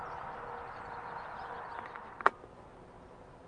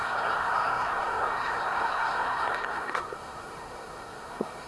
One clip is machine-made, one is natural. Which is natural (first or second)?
first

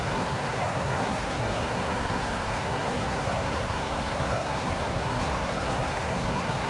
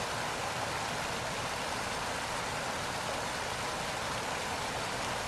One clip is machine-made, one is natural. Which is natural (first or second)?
second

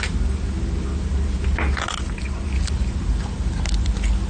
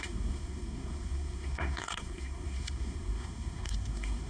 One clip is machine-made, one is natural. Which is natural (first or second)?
first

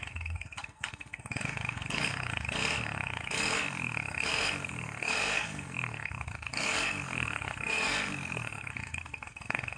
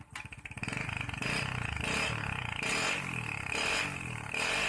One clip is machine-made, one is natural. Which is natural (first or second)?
second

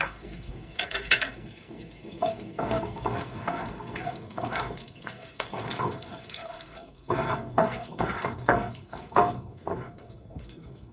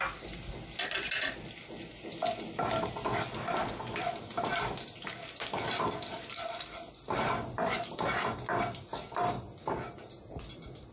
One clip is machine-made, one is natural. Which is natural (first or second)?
second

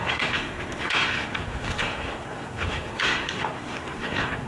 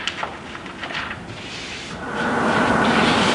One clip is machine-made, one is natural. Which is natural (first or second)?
second